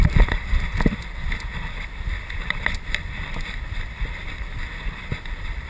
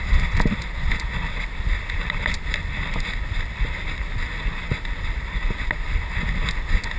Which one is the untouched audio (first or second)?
second